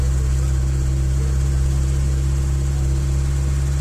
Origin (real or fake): real